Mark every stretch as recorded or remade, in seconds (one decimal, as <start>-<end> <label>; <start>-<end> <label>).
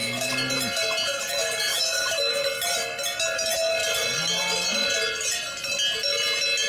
0.0-1.7 recorded; 1.7-2.3 remade; 2.3-6.7 recorded